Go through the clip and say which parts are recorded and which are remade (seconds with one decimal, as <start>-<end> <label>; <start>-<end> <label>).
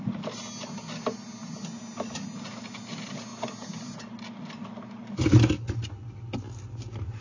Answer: 0.0-7.2 recorded